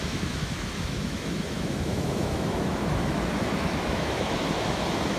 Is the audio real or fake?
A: fake